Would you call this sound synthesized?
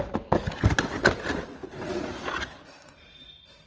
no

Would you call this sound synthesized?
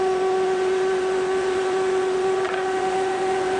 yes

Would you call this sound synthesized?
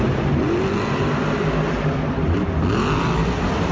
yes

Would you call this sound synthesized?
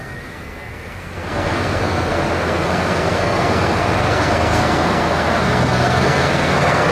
yes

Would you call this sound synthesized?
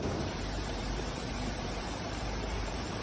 yes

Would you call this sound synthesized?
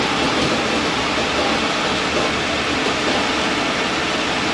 no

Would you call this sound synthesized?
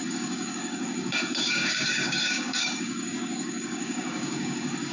yes